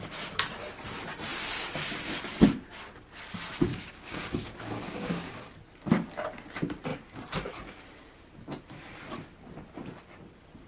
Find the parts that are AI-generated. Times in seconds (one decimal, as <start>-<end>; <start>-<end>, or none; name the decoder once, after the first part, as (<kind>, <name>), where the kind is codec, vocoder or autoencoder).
1.3-2.2 (codec, DAC); 3.7-5.3